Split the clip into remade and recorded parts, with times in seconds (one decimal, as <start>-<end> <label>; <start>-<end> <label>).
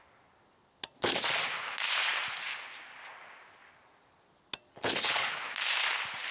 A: 0.0-4.7 recorded; 4.7-5.3 remade; 5.3-6.3 recorded